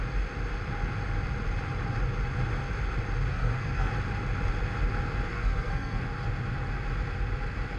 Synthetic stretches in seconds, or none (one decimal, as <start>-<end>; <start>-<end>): 3.3-3.9; 5.3-6.0

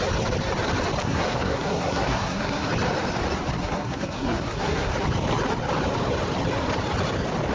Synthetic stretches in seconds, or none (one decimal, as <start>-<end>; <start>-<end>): 1.0-2.7; 3.6-4.9

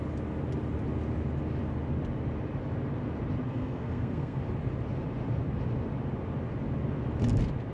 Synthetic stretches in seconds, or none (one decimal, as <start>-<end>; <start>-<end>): 3.5-4.4

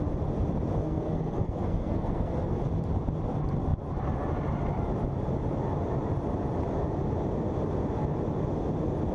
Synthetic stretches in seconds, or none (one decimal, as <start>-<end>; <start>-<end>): 0.8-2.6

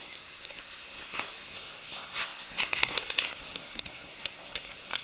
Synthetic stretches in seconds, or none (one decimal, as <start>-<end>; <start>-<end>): 0.0-5.0

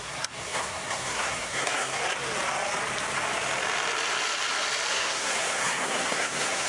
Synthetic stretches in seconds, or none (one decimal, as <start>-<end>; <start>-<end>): 0.0-2.0; 4.9-6.7

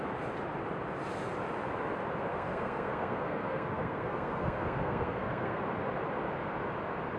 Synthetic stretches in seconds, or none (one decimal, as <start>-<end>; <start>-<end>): 2.3-5.6